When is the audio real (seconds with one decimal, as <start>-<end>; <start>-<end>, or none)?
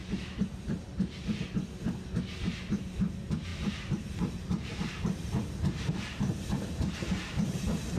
0.0-2.5